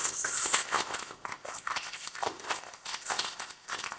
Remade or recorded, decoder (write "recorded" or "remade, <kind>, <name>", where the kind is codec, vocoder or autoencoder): remade, codec, ZipCodec